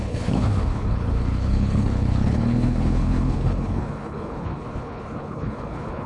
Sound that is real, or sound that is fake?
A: fake